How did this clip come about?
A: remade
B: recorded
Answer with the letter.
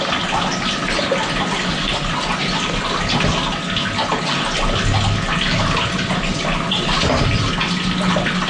B